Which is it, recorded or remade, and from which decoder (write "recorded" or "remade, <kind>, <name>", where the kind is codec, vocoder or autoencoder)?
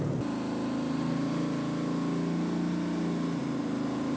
recorded